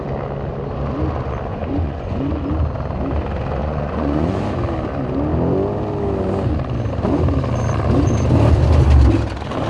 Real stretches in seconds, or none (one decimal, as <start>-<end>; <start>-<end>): 0.0-1.5; 2.4-3.6; 4.4-9.7